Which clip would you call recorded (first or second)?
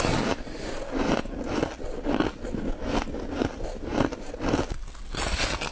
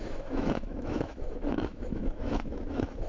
first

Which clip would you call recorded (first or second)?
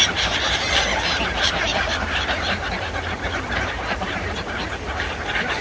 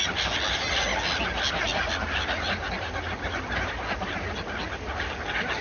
second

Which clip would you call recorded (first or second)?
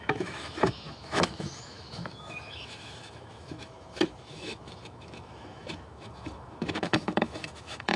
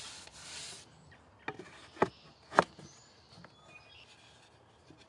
second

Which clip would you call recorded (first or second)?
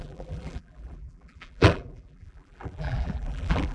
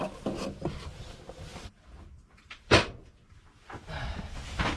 second